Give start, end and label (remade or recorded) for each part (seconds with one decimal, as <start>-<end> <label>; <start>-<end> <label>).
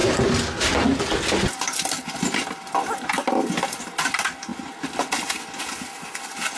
0.0-6.6 recorded